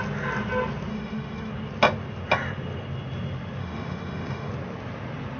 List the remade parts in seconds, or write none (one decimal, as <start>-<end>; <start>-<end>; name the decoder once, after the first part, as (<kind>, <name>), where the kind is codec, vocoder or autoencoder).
0.9-1.5 (autoencoder, DAC-VAE); 3.6-4.5